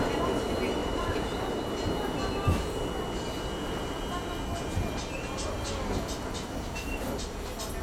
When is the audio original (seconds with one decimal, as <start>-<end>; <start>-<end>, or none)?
0.0-0.8; 1.6-7.8